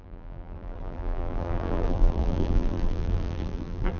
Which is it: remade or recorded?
remade